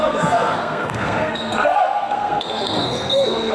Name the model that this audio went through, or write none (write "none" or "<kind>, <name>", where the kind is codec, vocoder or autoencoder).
codec, SNAC